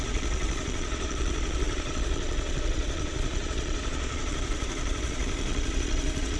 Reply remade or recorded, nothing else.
remade